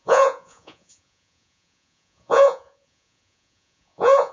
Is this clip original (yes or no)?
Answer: no